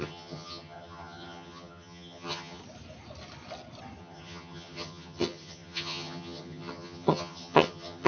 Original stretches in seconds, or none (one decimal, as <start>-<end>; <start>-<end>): 2.6-4.0